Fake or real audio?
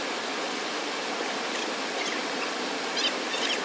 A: real